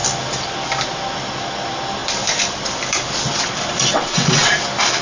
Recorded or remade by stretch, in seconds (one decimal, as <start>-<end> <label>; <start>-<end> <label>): 0.0-3.9 recorded; 3.9-4.5 remade; 4.5-5.0 recorded

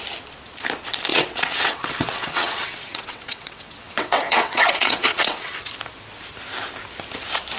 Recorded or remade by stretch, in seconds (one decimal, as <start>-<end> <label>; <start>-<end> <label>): 0.0-1.1 recorded; 1.1-5.7 remade; 5.7-7.6 recorded

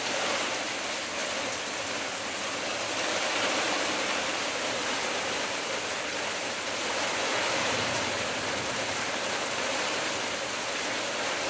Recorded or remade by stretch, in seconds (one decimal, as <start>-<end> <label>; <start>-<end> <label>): 0.0-11.5 recorded